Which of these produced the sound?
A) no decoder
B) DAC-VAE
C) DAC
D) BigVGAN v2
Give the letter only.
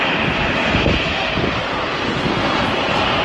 A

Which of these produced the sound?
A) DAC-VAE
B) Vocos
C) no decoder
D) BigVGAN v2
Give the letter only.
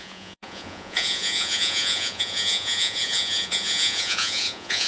B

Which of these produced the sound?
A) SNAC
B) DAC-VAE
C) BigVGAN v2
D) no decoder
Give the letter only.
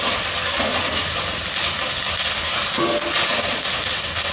D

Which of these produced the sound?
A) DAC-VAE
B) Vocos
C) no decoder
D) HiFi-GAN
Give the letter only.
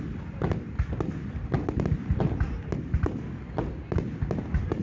C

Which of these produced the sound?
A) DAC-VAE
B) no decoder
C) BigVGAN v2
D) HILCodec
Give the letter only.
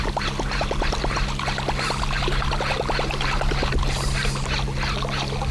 B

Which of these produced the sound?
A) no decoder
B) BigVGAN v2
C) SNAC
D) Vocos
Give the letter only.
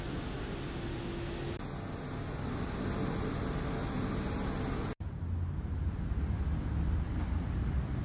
A